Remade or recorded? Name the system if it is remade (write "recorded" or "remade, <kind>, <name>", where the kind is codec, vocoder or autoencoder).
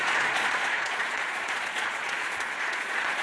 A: remade, vocoder, Vocos